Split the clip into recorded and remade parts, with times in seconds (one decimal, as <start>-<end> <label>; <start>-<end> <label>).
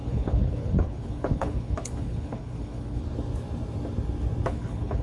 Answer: 0.0-3.0 remade; 3.0-4.5 recorded; 4.5-5.0 remade